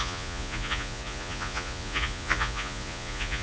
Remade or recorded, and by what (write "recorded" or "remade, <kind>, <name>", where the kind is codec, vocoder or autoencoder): remade, vocoder, Vocos